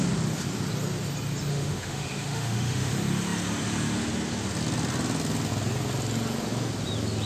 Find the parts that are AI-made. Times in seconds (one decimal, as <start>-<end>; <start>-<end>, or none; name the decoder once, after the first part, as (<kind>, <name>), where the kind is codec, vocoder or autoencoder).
1.5-2.9 (autoencoder, DAC-VAE)